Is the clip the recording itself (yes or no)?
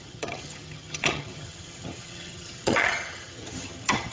no